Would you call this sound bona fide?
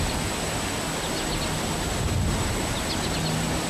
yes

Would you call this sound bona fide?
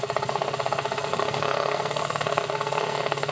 no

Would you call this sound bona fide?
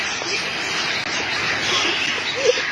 yes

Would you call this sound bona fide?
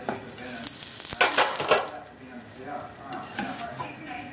yes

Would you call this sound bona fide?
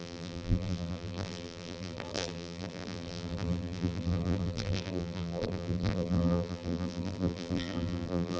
no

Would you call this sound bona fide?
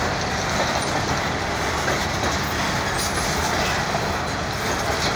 yes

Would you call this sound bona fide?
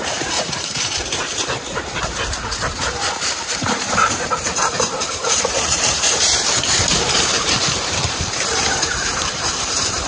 no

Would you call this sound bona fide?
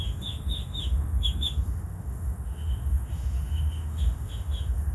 no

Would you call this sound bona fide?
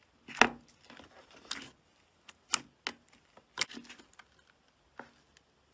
yes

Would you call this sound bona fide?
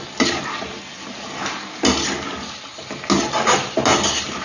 yes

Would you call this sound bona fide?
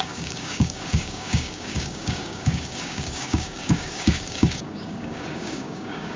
no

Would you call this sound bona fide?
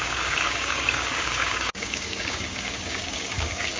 no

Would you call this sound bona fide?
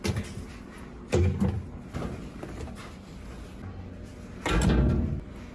yes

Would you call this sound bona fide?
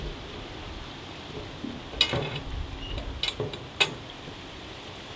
yes